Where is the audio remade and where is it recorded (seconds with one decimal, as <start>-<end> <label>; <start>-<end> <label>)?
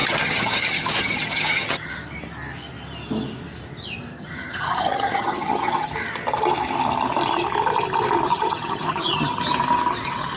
0.0-1.9 remade; 1.9-4.1 recorded; 4.1-5.9 remade; 5.9-8.3 recorded; 8.3-9.4 remade; 9.4-10.4 recorded